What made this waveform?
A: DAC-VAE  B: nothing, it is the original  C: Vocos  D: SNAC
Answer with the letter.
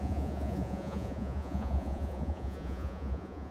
C